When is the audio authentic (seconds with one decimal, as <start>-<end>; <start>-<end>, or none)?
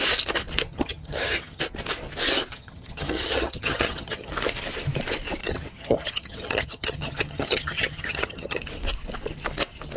0.0-0.7; 1.6-2.5; 4.3-5.4; 8.6-10.0